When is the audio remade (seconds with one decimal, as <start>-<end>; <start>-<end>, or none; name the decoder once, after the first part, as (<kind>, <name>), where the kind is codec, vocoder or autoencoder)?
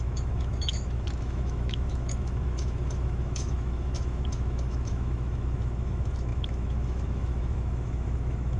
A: 0.0-8.6 (autoencoder, DAC-VAE)